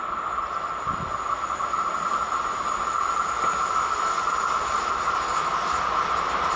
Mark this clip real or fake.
real